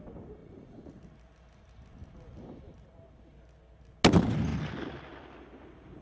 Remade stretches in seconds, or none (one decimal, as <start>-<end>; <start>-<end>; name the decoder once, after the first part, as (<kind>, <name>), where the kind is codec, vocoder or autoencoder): 0.4-1.0 (vocoder, Vocos)